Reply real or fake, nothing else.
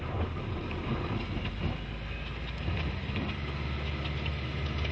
real